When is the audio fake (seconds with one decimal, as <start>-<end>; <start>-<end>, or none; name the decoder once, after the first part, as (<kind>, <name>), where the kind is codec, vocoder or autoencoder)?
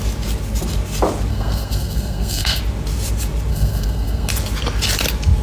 1.3-2.6 (codec, SNAC); 3.5-4.3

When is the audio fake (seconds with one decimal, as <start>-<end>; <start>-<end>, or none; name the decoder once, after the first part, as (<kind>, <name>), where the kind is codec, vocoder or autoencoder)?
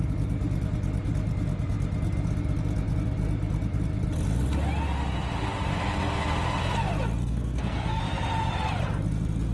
7.2-8.0 (codec, SNAC)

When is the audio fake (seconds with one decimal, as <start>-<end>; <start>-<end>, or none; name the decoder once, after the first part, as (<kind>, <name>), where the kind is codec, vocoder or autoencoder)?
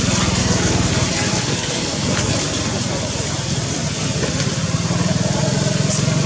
0.4-0.9 (codec, SNAC); 1.3-2.3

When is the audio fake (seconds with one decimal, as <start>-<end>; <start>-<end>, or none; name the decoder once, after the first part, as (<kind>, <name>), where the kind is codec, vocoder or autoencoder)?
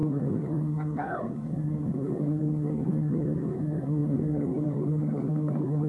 0.0-5.9 (codec, SNAC)